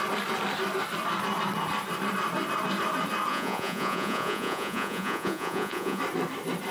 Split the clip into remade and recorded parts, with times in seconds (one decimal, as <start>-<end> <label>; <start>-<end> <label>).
0.0-3.3 recorded; 3.3-6.0 remade; 6.0-6.7 recorded

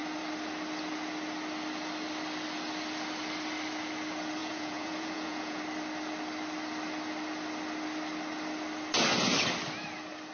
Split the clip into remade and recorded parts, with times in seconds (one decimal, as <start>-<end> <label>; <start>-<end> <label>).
0.0-4.4 recorded; 4.4-5.6 remade; 5.6-10.3 recorded